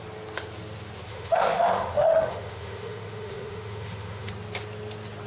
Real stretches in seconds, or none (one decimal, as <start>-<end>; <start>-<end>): 0.0-1.1; 4.3-5.3